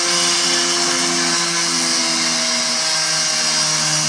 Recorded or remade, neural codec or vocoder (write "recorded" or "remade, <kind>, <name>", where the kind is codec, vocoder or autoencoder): recorded